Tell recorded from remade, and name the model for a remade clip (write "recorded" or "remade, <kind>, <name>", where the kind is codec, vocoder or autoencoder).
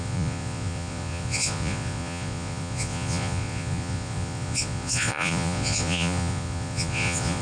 remade, vocoder, Vocos